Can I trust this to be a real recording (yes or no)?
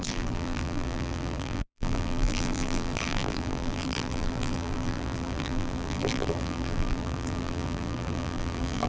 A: no